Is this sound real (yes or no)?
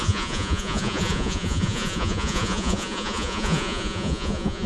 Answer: no